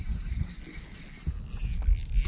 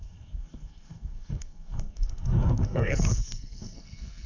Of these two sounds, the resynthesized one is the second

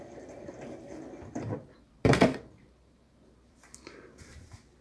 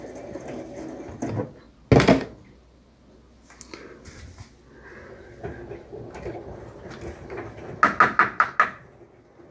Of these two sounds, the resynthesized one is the first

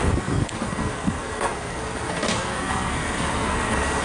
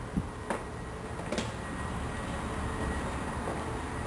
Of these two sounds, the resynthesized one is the first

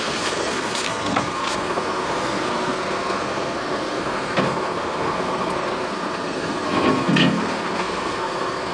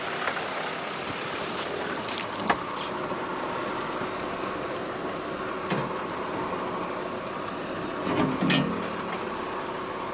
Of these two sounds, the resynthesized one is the first